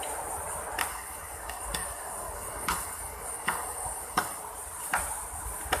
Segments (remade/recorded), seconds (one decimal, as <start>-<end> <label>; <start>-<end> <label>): 0.0-0.9 recorded; 0.9-4.4 remade; 4.4-5.8 recorded